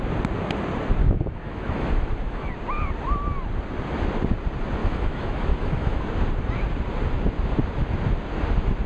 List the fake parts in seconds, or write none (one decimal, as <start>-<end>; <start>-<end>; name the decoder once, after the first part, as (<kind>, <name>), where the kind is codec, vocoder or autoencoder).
1.0-2.5 (autoencoder, DAC-VAE); 4.8-6.0